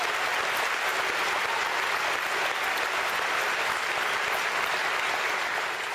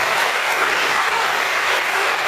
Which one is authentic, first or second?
first